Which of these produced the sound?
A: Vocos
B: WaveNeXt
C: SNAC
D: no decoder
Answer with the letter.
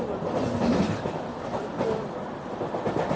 D